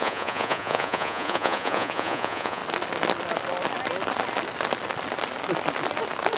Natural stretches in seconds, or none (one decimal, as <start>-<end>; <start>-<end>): 2.6-6.4